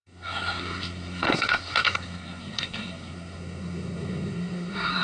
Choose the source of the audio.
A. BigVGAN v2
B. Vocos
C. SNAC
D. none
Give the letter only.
C